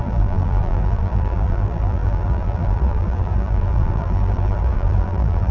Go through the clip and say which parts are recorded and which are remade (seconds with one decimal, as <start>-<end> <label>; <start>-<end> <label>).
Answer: 0.0-5.5 remade